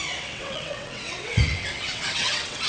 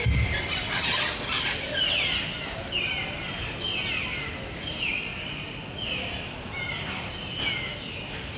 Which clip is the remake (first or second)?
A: first